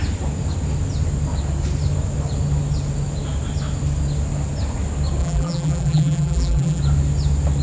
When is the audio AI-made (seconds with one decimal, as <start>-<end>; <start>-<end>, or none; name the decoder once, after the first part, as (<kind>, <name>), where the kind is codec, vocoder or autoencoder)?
5.2-6.8 (vocoder, BigVGAN v2)